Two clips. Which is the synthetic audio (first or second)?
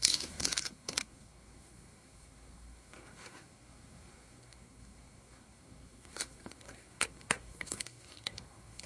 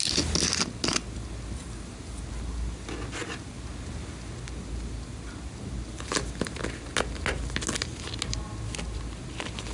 first